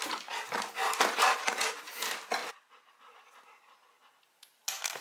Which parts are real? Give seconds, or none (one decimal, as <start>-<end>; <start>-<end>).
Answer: 0.0-0.8; 1.4-2.4; 2.9-5.0